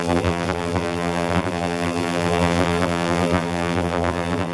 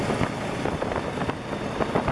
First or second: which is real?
second